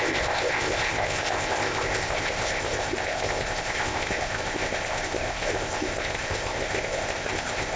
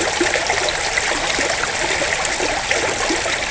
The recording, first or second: second